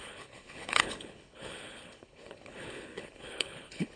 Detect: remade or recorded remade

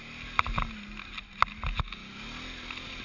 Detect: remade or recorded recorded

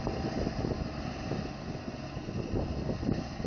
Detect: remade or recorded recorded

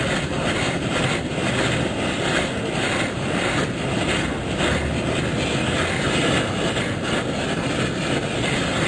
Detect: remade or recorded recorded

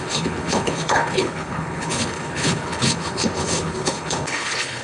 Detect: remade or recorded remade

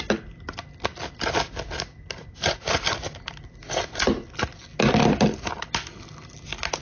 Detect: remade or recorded recorded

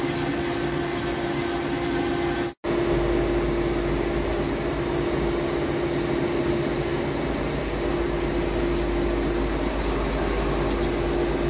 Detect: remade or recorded recorded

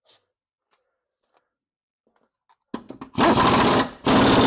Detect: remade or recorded recorded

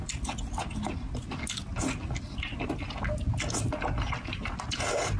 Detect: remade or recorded recorded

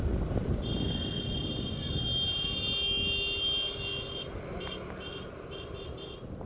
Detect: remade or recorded recorded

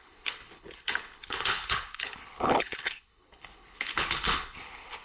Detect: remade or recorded remade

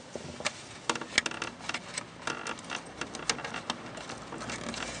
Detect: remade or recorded recorded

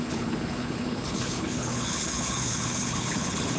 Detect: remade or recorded remade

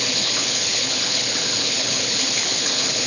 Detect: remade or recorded remade